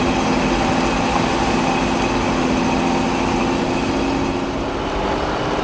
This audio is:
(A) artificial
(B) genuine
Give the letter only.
B